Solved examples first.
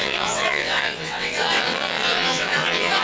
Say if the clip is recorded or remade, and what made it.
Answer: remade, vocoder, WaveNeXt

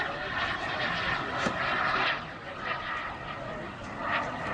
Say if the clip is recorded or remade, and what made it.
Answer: recorded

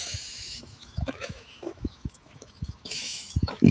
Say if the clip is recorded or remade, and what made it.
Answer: remade, autoencoder, DAC-VAE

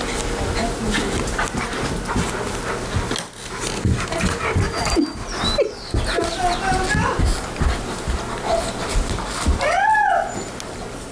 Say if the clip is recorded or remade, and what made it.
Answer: recorded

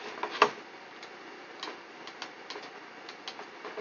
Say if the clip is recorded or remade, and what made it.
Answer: recorded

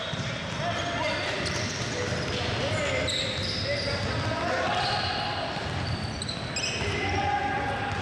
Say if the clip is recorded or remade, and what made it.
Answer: recorded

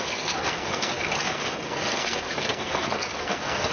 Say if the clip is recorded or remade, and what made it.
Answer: remade, codec, SNAC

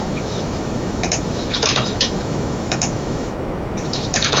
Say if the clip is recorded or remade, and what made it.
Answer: remade, autoencoder, DAC-VAE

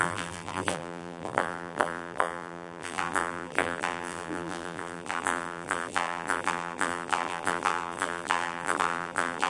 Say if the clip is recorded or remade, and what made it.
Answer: remade, vocoder, BigVGAN v2